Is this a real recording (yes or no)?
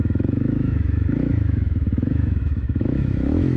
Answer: no